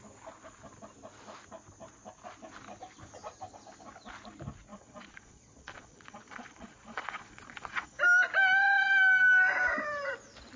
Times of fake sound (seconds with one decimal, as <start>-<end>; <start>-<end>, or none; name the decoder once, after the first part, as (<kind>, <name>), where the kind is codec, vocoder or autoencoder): 4.7-8.0 (vocoder, Vocos)